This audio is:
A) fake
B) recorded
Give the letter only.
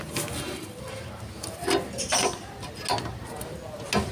B